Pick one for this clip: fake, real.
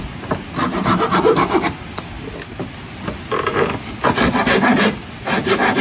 real